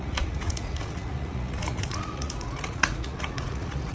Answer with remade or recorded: remade